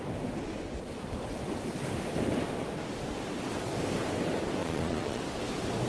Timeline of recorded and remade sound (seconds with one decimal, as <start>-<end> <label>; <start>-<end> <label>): 0.0-4.6 recorded; 4.6-5.2 remade; 5.2-5.9 recorded